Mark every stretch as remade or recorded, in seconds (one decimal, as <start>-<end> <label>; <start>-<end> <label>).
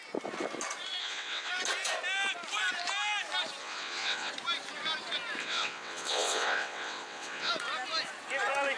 0.0-1.0 recorded; 1.0-1.5 remade; 1.5-3.6 recorded; 3.6-4.3 remade; 4.3-5.4 recorded; 5.4-7.5 remade; 7.5-8.8 recorded